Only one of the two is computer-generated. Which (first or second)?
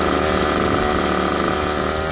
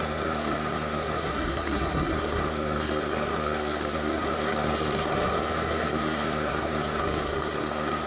second